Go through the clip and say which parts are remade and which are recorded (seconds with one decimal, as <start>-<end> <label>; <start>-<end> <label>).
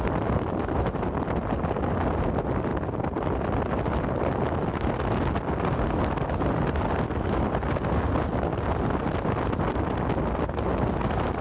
0.0-11.4 recorded